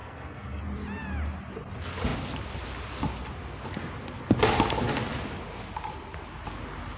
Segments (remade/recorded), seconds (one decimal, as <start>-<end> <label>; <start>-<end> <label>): 0.0-0.6 remade; 0.6-7.0 recorded